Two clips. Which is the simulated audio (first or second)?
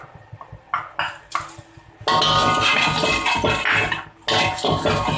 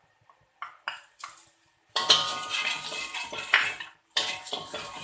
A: second